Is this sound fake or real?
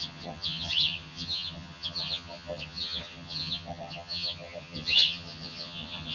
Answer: fake